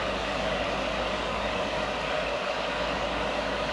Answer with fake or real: fake